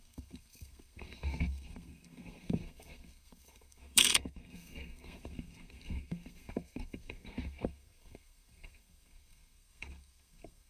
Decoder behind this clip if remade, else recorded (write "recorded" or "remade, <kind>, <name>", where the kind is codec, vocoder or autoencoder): remade, codec, SNAC